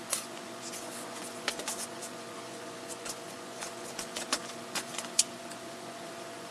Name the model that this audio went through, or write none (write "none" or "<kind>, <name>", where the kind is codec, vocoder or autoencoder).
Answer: vocoder, Vocos